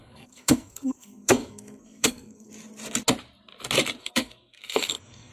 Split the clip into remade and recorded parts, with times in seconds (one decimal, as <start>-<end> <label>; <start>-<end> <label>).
0.0-2.5 remade; 2.5-4.0 recorded; 4.0-5.3 remade